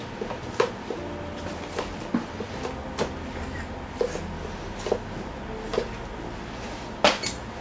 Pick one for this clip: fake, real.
real